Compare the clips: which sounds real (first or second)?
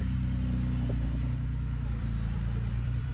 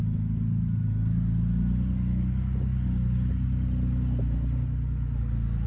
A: second